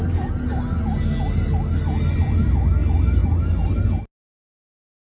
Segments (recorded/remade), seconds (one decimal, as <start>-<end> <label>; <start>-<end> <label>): 0.0-5.1 recorded